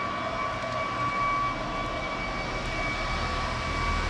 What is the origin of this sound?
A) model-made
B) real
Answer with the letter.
B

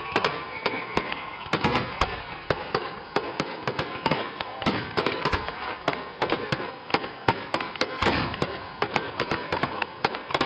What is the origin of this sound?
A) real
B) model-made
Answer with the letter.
B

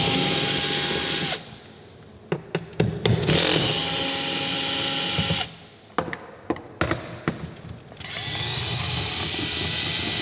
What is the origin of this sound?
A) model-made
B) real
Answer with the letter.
B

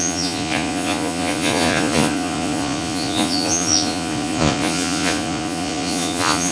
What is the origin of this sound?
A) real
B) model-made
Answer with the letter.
B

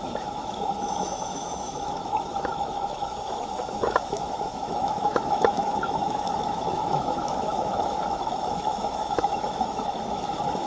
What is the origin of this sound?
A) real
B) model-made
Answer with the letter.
B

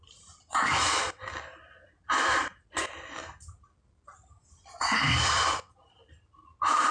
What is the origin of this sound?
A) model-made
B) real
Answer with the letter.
A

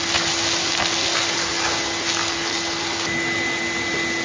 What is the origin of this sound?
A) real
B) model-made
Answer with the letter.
A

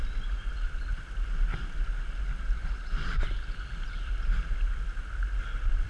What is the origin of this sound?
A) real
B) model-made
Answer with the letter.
A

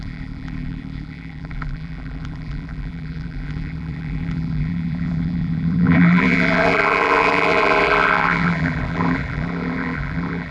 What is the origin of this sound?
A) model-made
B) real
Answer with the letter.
A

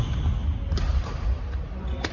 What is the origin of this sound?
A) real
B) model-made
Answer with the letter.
A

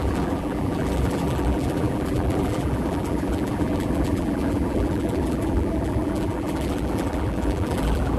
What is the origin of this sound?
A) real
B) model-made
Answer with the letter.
B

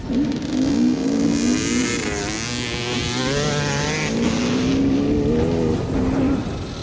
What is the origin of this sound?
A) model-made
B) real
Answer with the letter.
B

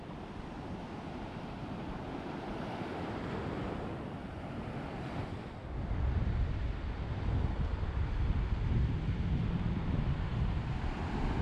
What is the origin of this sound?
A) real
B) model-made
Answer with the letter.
A